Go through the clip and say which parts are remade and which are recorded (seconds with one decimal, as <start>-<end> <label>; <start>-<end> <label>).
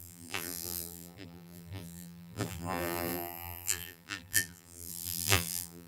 0.0-5.9 remade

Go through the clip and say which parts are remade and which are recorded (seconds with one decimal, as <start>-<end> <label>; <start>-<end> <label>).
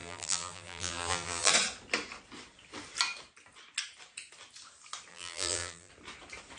0.0-1.5 remade; 1.5-5.1 recorded; 5.1-5.9 remade; 5.9-6.6 recorded